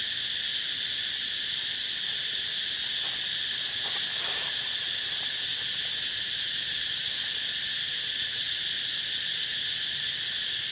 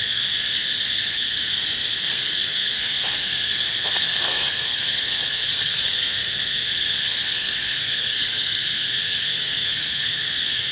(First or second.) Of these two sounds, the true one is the first